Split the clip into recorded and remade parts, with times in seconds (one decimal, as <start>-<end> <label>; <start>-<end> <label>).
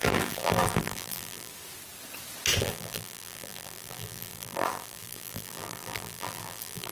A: 0.0-1.5 remade; 1.5-2.6 recorded; 2.6-6.9 remade